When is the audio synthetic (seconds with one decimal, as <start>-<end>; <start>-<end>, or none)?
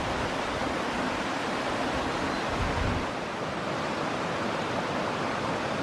none